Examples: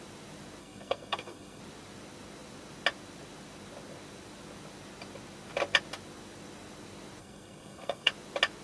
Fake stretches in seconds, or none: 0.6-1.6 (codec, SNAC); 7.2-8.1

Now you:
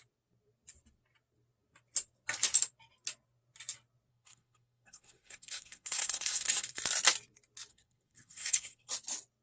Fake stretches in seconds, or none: 4.1-6.8 (codec, SNAC); 7.7-8.9

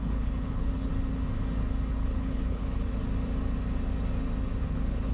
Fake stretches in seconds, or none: 0.0-0.9 (codec, HILCodec); 1.9-3.0; 4.6-5.1

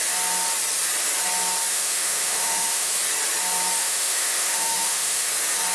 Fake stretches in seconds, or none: 1.7-2.9 (autoencoder, DAC-VAE); 3.8-5.3